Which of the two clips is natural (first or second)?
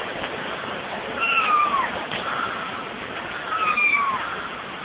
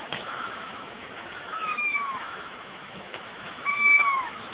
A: first